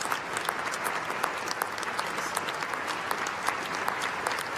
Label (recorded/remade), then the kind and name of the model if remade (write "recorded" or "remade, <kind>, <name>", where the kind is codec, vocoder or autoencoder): recorded